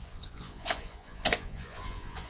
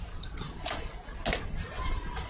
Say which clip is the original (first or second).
second